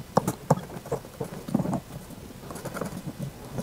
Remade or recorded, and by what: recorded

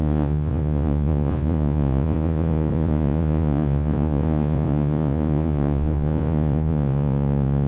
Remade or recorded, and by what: remade, vocoder, Vocos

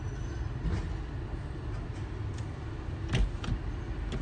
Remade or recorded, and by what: recorded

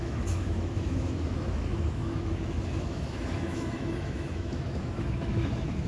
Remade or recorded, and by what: remade, autoencoder, DAC-VAE